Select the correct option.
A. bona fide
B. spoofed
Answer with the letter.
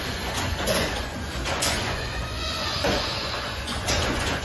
B